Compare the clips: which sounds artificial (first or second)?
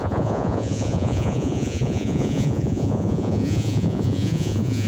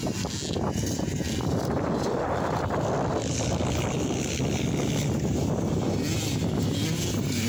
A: first